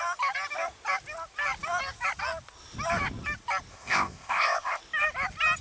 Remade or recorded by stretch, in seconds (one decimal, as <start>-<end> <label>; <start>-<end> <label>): 0.0-3.7 recorded; 3.7-4.8 remade; 4.8-5.6 recorded